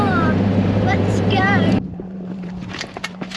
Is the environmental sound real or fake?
fake